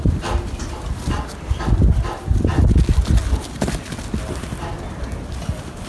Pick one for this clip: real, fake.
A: real